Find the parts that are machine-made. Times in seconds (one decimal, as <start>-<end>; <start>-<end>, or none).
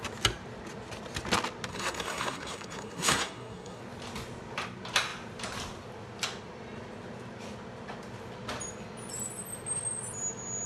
1.7-3.8